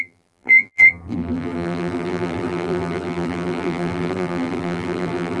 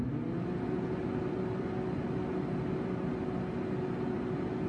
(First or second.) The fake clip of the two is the first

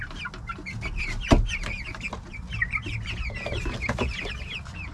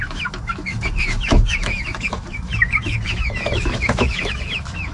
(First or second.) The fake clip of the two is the second